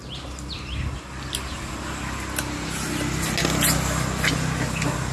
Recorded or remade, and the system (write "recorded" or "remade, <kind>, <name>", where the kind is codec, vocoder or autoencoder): recorded